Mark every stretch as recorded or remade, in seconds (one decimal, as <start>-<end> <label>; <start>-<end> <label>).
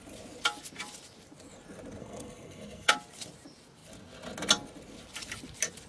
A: 0.0-2.0 recorded; 2.0-2.9 remade; 2.9-5.9 recorded